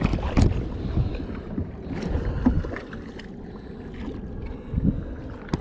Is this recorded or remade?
recorded